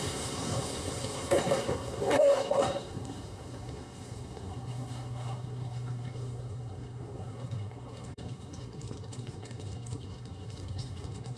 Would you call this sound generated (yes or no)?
yes